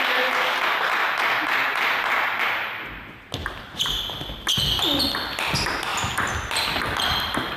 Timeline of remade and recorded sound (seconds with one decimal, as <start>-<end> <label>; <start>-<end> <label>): 0.0-3.4 recorded; 3.4-4.0 remade; 4.0-7.6 recorded